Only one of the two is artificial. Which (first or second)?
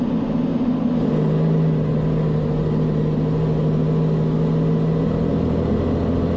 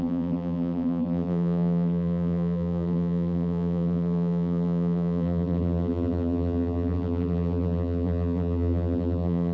second